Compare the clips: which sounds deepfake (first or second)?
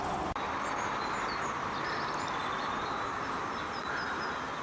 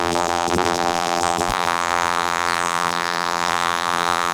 second